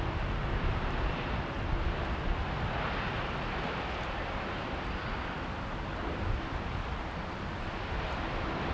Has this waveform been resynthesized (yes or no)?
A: no